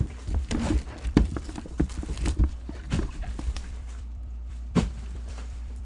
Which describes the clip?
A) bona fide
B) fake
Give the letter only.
B